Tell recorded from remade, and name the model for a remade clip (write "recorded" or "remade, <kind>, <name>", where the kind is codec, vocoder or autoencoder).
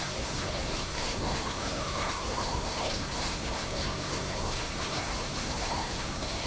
remade, codec, SNAC